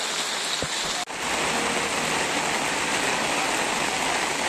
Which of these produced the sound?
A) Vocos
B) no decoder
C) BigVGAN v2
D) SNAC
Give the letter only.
B